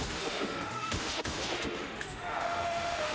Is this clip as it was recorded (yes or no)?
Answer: no